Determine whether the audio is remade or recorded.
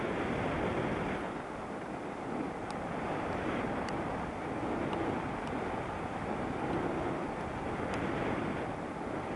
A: recorded